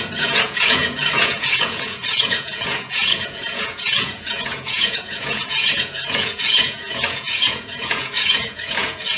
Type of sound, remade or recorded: remade